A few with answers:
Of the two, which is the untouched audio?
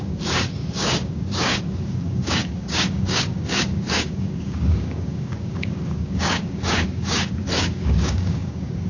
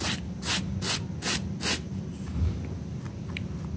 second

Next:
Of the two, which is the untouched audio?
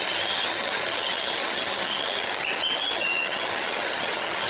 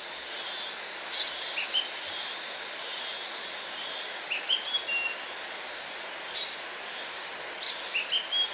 second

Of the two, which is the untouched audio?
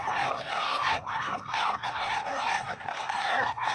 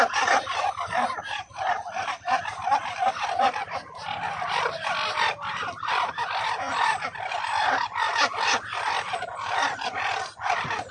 second